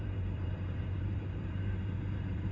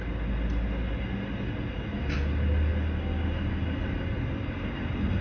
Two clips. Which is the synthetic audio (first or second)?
first